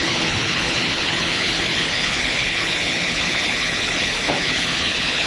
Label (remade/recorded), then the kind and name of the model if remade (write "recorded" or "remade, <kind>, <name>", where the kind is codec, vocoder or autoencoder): remade, codec, HILCodec